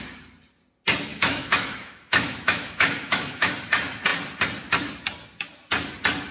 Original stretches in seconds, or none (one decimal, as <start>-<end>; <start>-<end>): 0.0-1.1; 3.5-6.3